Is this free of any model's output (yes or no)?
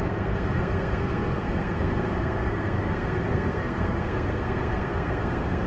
no